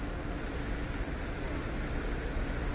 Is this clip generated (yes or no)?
no